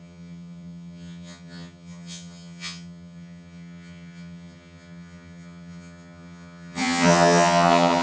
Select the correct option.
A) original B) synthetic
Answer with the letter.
B